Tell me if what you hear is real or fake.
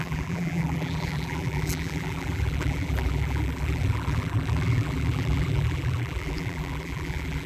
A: fake